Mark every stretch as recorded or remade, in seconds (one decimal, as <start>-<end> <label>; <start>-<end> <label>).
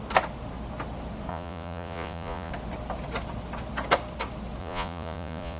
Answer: 0.0-1.3 recorded; 1.3-2.5 remade; 2.5-4.6 recorded; 4.6-5.6 remade